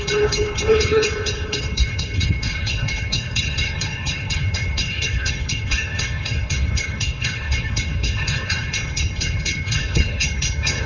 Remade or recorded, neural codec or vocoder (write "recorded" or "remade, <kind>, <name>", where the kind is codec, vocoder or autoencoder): remade, codec, HILCodec